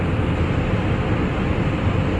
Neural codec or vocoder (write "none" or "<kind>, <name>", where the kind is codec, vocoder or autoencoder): none